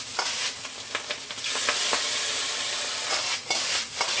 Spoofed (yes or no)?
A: no